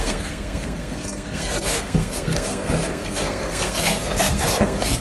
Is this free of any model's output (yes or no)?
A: no